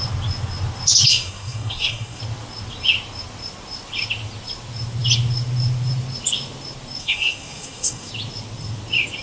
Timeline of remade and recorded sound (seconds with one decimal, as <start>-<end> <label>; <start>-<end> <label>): 0.0-1.1 recorded; 1.1-2.2 remade; 2.2-7.0 recorded; 7.0-8.1 remade; 8.1-9.2 recorded

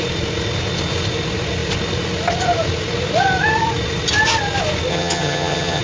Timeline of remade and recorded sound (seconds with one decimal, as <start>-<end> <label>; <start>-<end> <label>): 0.0-4.9 recorded; 4.9-5.8 remade

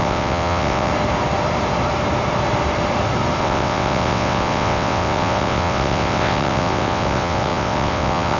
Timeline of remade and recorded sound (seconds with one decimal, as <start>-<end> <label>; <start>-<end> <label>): 0.0-0.9 remade; 0.9-3.4 recorded; 3.4-8.4 remade

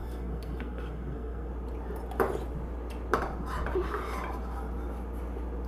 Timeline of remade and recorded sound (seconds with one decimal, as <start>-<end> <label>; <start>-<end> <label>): 0.0-1.5 remade; 1.5-5.7 recorded

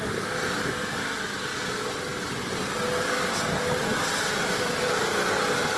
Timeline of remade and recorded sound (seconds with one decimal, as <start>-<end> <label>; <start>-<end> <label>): 0.0-5.8 recorded

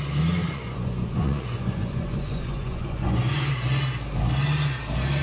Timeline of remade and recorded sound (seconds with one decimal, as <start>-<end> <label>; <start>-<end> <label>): 0.0-0.4 recorded; 0.4-3.5 remade; 3.5-5.2 recorded